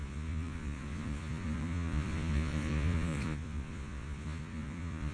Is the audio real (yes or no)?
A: no